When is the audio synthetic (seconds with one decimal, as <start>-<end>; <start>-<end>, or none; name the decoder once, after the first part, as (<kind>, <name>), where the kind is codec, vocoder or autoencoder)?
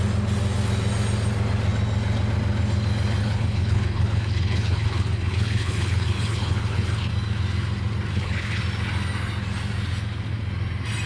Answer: 3.2-7.1 (codec, HILCodec); 8.1-8.6